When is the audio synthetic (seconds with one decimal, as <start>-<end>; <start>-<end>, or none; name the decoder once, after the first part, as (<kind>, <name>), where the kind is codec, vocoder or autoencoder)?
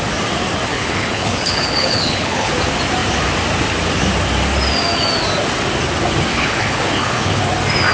0.7-2.5 (codec, HILCodec); 6.3-7.4